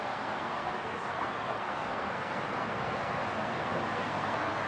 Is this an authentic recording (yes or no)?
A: no